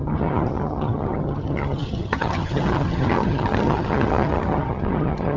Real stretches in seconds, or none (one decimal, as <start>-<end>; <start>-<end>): none